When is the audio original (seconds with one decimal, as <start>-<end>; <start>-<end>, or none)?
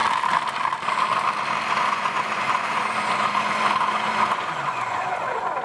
0.0-1.7